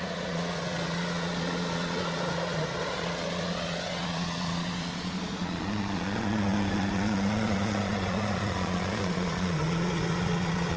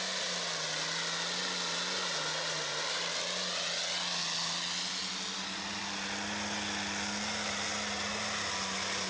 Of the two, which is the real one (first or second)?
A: second